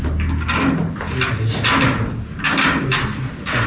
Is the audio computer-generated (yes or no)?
no